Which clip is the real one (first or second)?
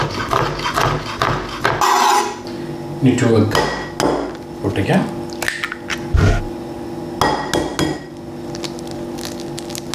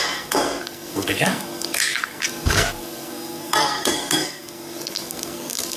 first